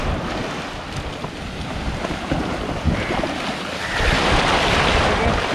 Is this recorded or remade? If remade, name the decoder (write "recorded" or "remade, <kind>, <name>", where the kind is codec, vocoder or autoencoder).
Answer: recorded